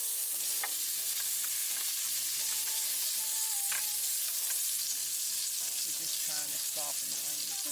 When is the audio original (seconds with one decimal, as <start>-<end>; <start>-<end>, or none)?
0.6-5.0; 6.3-7.7